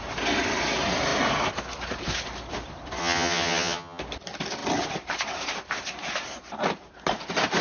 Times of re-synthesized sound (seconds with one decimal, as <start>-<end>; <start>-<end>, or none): 3.0-4.0

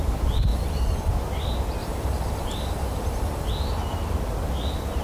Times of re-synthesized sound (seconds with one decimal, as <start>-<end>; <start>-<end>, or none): 0.5-1.1; 1.8-3.5

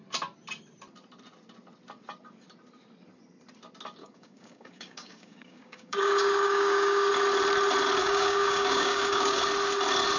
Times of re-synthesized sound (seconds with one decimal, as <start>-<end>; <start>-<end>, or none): 4.0-7.1; 8.0-9.4

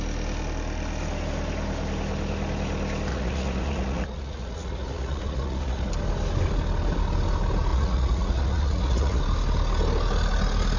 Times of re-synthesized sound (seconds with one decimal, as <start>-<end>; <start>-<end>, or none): 3.1-5.9; 7.7-9.2

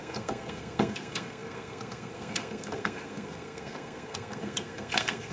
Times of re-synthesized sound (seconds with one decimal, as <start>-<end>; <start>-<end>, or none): 0.0-5.3

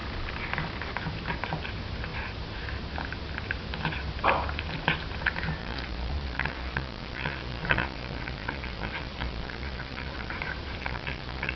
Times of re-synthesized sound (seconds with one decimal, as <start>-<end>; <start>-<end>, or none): 5.6-10.3; 10.8-11.6

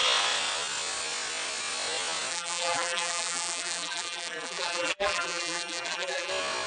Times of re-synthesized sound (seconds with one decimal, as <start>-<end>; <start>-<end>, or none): 2.3-6.3